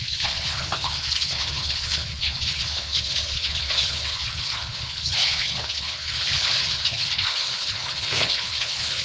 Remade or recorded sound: remade